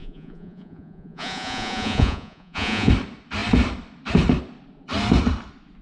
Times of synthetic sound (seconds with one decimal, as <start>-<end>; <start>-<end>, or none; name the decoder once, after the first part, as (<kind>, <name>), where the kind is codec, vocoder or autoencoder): 0.0-2.9 (vocoder, Vocos)